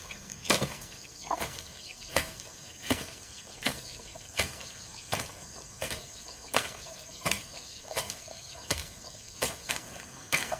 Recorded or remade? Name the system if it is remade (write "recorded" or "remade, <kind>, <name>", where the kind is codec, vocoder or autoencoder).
remade, codec, SNAC